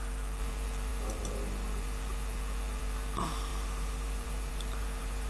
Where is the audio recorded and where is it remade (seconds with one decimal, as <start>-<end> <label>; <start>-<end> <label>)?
0.0-5.3 remade